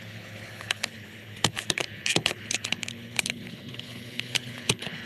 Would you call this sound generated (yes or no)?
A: yes